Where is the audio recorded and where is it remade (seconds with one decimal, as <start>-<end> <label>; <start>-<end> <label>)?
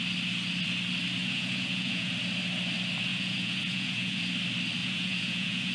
0.0-1.2 recorded; 1.2-2.1 remade; 2.1-3.1 recorded; 3.1-4.2 remade; 4.2-4.8 recorded; 4.8-5.7 remade